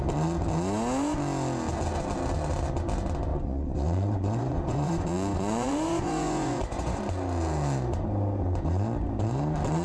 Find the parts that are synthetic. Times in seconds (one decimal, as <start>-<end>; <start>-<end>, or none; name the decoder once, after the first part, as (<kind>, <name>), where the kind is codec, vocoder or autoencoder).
3.3-7.0 (vocoder, Vocos)